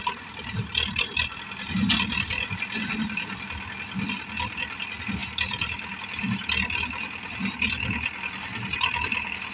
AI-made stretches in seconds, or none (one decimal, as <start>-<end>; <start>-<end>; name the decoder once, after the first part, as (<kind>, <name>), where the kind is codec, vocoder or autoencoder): none